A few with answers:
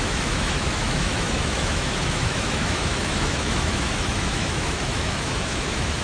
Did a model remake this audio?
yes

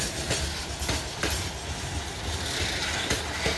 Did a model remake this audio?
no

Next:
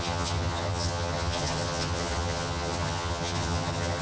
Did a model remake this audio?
yes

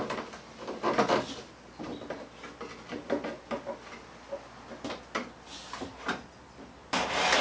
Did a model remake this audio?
no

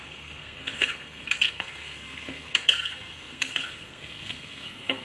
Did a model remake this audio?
yes